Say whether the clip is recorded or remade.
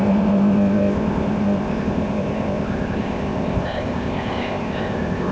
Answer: remade